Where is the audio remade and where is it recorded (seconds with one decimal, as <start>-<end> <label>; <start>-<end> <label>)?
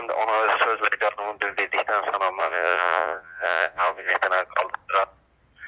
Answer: 0.0-2.4 recorded; 2.4-4.1 remade; 4.1-5.7 recorded